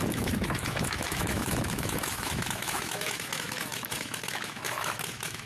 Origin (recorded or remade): remade